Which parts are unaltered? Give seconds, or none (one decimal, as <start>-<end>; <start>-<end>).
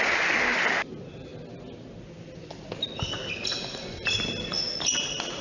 0.0-5.4